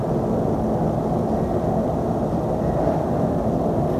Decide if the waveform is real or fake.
real